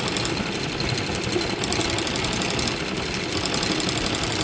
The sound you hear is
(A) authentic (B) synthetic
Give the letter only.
A